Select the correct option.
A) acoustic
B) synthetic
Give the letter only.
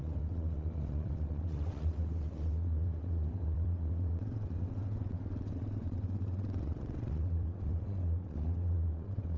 B